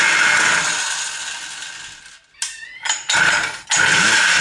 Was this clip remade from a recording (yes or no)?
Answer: no